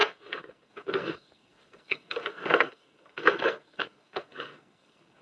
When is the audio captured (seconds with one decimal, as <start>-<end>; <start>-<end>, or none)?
none